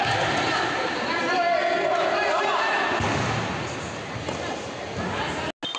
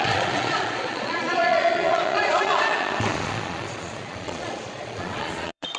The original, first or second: first